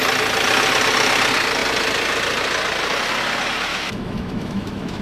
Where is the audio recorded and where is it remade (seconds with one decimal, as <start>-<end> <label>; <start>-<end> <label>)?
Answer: 0.0-3.7 recorded; 3.7-5.0 remade